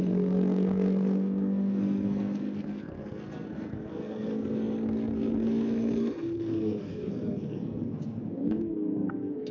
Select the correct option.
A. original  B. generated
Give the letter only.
B